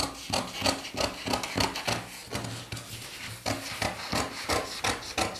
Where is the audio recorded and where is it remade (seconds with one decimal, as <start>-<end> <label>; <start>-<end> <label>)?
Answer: 0.0-5.4 recorded